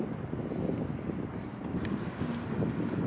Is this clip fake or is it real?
real